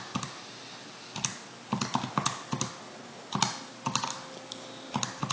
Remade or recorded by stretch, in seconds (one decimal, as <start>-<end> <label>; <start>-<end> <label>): 0.0-5.3 recorded